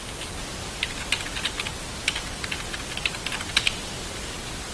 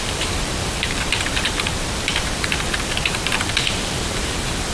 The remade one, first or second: second